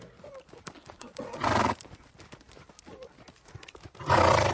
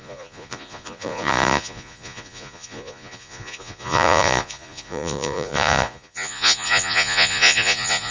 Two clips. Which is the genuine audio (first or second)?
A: first